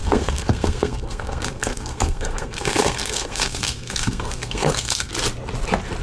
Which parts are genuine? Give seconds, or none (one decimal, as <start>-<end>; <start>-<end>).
5.1-6.0